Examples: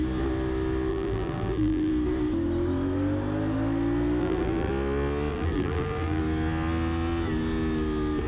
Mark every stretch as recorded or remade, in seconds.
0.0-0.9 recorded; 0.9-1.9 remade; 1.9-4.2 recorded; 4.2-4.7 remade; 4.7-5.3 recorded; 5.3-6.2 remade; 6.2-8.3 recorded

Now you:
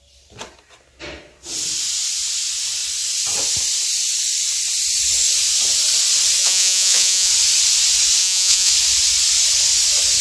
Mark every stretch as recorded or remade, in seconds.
0.0-6.4 recorded; 6.4-7.3 remade; 7.3-8.2 recorded; 8.2-8.7 remade; 8.7-10.2 recorded

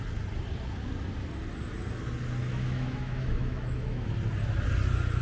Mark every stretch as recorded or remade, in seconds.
0.0-2.4 recorded; 2.4-4.1 remade; 4.1-5.2 recorded

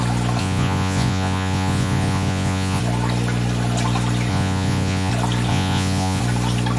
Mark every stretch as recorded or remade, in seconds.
0.0-0.4 recorded; 0.4-2.8 remade; 2.8-4.3 recorded; 4.3-5.1 remade; 5.1-5.5 recorded; 5.5-6.2 remade; 6.2-6.8 recorded

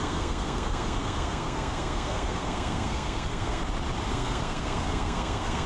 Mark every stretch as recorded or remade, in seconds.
0.0-3.6 remade; 3.6-4.1 recorded; 4.1-5.7 remade

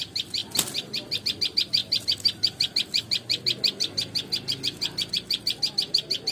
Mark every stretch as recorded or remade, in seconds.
0.0-6.3 recorded

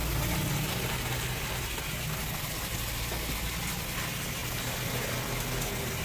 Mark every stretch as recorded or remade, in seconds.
0.0-6.0 recorded